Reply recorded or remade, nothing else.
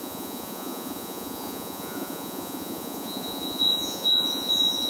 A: remade